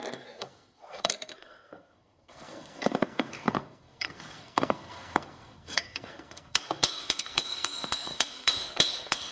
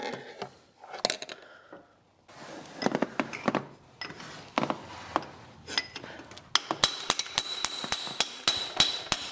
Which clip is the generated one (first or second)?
first